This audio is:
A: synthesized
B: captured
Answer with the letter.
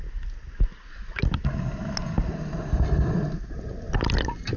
B